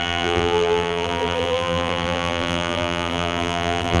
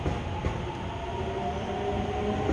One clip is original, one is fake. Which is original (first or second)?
second